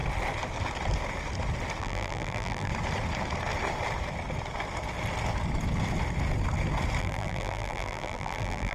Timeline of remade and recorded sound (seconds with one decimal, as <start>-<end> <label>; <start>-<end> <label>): 0.0-1.8 recorded; 1.8-2.7 remade; 2.7-7.0 recorded; 7.0-8.7 remade